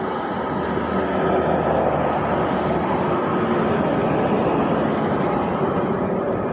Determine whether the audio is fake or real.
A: real